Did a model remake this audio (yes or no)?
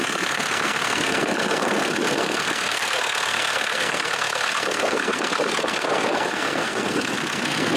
yes